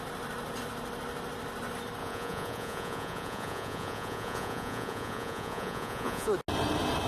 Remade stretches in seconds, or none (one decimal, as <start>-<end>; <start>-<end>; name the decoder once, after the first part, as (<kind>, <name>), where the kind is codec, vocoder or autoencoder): 2.0-6.3 (vocoder, Vocos)